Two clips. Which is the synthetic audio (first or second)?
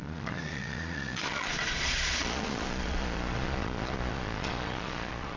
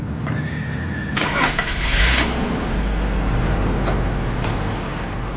first